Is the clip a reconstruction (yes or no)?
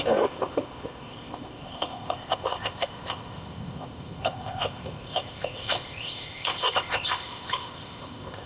yes